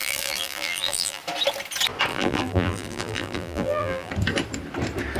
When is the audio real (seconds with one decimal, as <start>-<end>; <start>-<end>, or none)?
1.2-2.1; 4.1-5.2